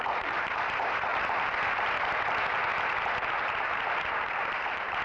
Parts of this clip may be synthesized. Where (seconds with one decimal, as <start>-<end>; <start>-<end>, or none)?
0.0-1.1; 4.1-5.0

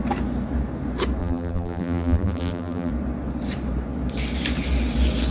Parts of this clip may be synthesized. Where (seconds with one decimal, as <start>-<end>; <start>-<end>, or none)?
1.2-2.9

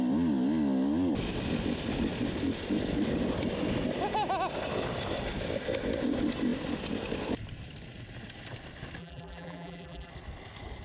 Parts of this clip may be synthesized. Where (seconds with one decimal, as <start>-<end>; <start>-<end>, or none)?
9.0-10.1

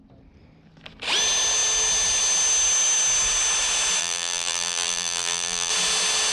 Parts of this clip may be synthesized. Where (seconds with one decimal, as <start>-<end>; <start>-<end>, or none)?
4.0-5.7

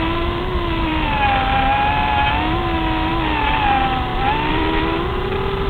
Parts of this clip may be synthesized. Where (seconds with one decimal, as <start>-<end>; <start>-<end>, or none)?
4.1-5.1

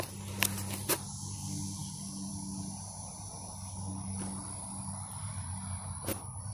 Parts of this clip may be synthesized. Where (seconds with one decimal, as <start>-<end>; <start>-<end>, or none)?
none